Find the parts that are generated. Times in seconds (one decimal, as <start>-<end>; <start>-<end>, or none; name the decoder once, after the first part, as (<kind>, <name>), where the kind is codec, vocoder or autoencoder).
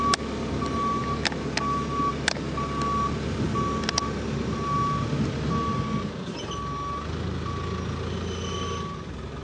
none